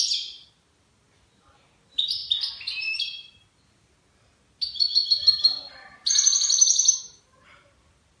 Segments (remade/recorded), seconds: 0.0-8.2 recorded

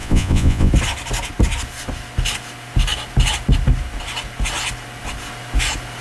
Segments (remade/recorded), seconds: 0.0-0.7 remade; 0.7-6.0 recorded

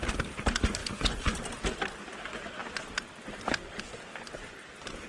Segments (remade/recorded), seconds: 0.0-0.8 recorded; 0.8-1.4 remade; 1.4-5.1 recorded

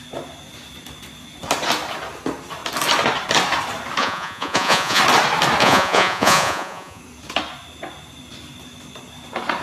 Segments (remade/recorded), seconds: 0.0-4.0 recorded; 4.0-5.0 remade; 5.0-5.6 recorded; 5.6-7.0 remade; 7.0-9.6 recorded